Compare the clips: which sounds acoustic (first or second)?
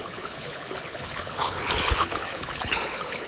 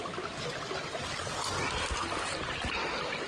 second